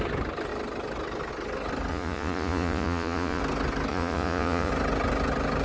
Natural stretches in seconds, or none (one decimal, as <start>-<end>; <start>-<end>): 0.0-1.9; 3.4-3.9; 4.7-5.6